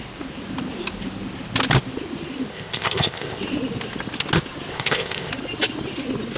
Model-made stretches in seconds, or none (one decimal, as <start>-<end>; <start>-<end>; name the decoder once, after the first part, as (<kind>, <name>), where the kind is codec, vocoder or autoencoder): 2.5-3.4 (codec, ZipCodec); 4.7-5.3